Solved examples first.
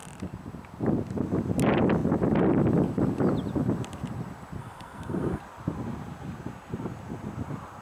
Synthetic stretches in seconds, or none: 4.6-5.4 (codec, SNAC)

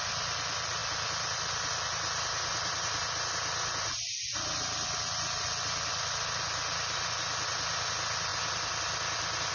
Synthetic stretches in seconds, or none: none

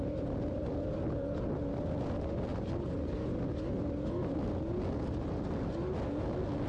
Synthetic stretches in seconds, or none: none

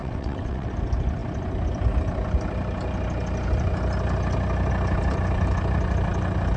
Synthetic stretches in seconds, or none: 0.0-0.7 (vocoder, WaveNeXt)